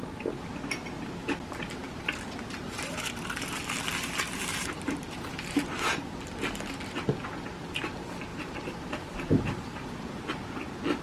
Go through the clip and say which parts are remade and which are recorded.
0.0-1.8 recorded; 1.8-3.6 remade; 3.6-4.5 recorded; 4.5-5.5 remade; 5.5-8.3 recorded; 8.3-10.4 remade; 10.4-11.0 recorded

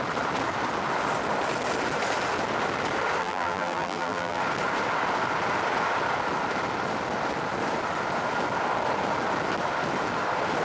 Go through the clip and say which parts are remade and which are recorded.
0.0-3.2 recorded; 3.2-4.4 remade; 4.4-10.6 recorded

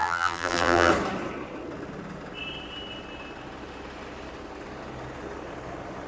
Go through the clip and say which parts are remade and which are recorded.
0.0-0.9 remade; 0.9-6.1 recorded

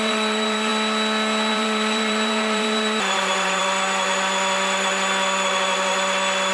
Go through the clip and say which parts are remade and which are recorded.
0.0-0.7 remade; 0.7-1.5 recorded; 1.5-3.6 remade; 3.6-6.5 recorded

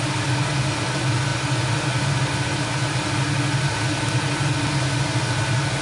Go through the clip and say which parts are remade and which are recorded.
0.0-5.8 recorded

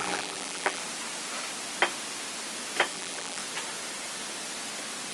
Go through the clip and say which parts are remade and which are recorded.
0.0-0.8 remade; 0.8-2.9 recorded; 2.9-3.4 remade; 3.4-5.1 recorded

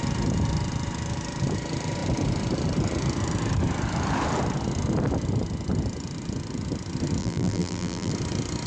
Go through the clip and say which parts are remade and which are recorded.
0.0-7.2 recorded; 7.2-8.1 remade; 8.1-8.7 recorded

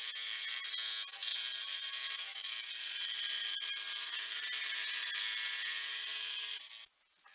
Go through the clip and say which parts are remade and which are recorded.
0.0-0.7 remade; 0.7-1.3 recorded; 1.3-5.2 remade; 5.2-5.7 recorded; 5.7-6.7 remade; 6.7-7.3 recorded